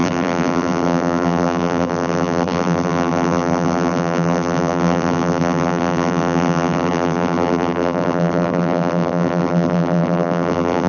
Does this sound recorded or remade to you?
remade